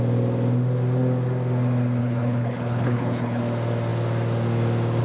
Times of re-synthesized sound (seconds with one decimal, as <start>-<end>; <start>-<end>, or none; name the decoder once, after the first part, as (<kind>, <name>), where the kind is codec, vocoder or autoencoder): 2.0-3.4 (codec, HILCodec)